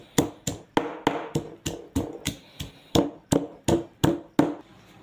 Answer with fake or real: real